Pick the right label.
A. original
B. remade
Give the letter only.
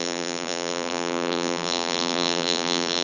B